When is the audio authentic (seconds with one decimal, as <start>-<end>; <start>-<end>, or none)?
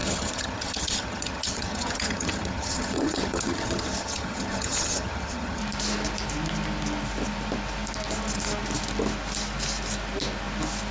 5.6-10.9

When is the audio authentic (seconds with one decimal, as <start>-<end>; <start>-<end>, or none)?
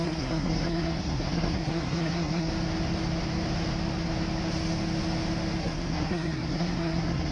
2.5-5.6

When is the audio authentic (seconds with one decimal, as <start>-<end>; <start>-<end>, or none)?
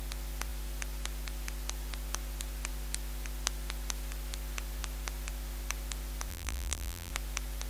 0.0-6.3; 7.1-7.7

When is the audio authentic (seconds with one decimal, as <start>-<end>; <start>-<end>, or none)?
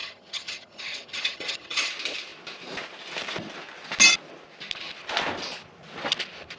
1.9-6.6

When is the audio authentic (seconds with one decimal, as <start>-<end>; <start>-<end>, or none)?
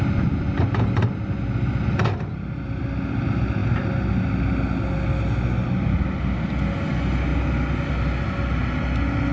0.0-9.3